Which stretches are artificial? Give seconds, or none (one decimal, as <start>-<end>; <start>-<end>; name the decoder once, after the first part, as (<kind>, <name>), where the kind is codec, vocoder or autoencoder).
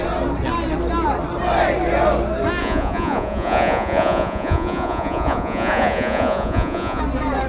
2.6-7.0 (vocoder, Vocos)